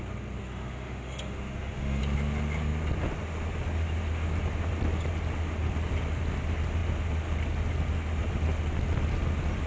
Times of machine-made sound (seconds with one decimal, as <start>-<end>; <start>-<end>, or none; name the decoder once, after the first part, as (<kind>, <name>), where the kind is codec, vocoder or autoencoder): 0.4-2.0 (autoencoder, DAC-VAE)